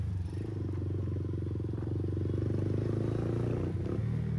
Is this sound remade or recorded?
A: recorded